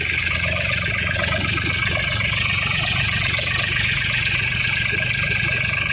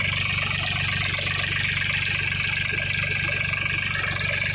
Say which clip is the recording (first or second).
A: second